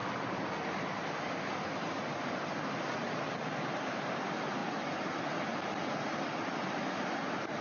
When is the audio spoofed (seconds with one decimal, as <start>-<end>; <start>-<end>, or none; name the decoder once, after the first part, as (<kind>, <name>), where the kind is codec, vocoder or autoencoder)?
none